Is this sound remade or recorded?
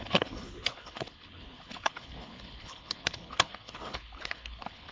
remade